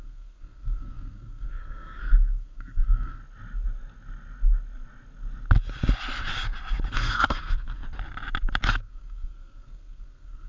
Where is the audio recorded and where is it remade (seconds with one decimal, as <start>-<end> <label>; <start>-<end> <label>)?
0.0-3.2 remade; 3.2-6.9 recorded; 6.9-7.8 remade; 7.8-8.8 recorded; 8.8-10.5 remade